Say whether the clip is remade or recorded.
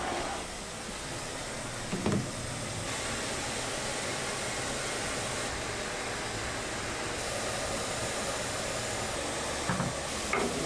recorded